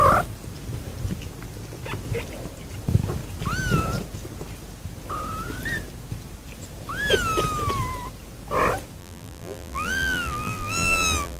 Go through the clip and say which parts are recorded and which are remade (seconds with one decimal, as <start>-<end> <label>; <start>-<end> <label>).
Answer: 0.0-9.0 recorded; 9.0-11.4 remade